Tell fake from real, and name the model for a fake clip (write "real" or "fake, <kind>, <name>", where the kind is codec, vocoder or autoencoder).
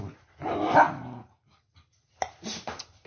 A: real